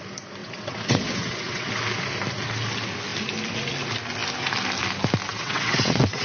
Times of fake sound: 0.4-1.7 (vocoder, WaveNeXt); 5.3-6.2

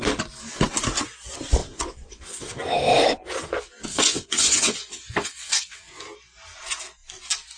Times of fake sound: 1.6-2.6 (vocoder, WaveNeXt); 3.9-6.0

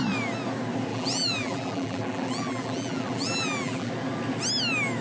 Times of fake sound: 0.9-3.9 (vocoder, BigVGAN v2)

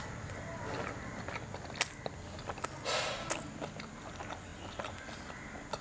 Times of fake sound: none

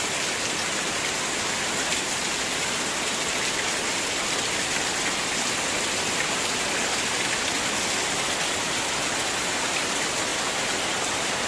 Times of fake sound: none

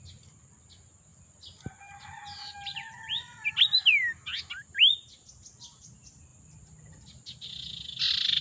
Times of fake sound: none

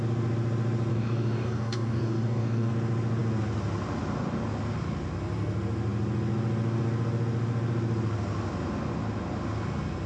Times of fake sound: 0.9-2.7 (codec, DAC)

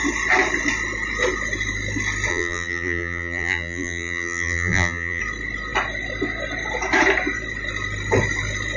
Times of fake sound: 2.3-5.2 (vocoder, BigVGAN v2)